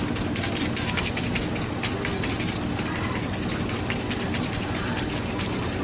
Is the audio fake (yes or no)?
no